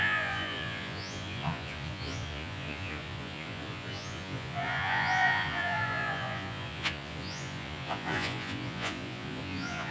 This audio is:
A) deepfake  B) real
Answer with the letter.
A